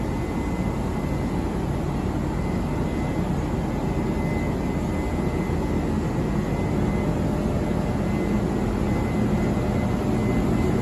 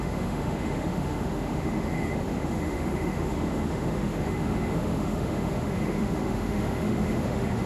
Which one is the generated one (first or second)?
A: second